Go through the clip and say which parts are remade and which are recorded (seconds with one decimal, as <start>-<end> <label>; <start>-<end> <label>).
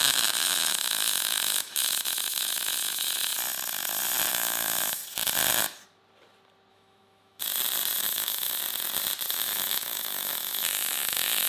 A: 0.0-3.3 remade; 3.3-4.3 recorded; 4.3-5.0 remade; 5.0-6.7 recorded; 6.7-7.4 remade; 7.4-8.0 recorded; 8.0-8.6 remade; 8.6-9.3 recorded; 9.3-11.5 remade